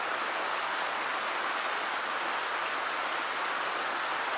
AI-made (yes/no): no